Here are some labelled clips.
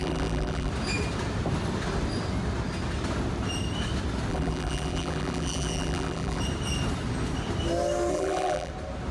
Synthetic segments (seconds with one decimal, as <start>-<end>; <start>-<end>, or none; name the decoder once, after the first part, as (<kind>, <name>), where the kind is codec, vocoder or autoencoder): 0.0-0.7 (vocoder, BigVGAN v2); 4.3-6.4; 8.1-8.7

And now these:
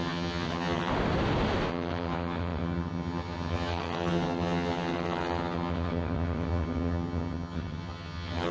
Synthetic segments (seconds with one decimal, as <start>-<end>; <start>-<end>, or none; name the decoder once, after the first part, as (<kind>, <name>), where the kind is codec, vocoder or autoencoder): 0.0-0.9 (vocoder, HiFi-GAN); 1.7-8.5

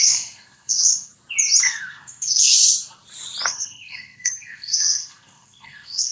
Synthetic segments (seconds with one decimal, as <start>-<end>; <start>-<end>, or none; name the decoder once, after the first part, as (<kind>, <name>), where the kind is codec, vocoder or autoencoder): 0.0-1.1 (codec, SNAC); 1.6-2.5; 3.5-6.1

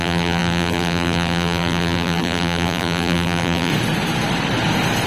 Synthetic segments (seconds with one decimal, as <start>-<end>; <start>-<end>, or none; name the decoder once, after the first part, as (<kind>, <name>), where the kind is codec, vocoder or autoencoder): 0.0-3.7 (vocoder, BigVGAN v2)

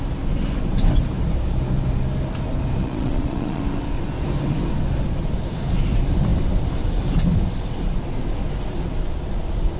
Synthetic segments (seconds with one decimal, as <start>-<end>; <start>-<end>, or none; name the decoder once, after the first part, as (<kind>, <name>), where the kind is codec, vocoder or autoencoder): 2.8-3.6 (vocoder, Vocos)